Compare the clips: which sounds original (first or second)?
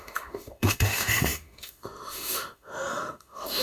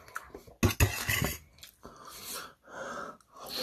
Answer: second